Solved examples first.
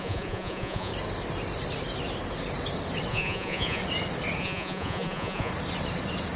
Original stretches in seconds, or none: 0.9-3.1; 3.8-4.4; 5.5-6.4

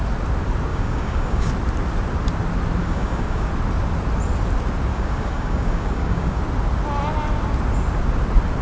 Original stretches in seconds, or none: 0.0-0.7; 1.5-2.8; 3.5-4.9; 6.4-8.6